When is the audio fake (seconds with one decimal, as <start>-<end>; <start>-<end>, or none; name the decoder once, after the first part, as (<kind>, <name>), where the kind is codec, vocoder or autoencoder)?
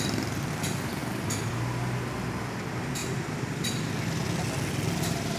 none